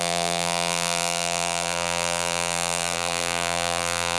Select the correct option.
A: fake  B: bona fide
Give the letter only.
A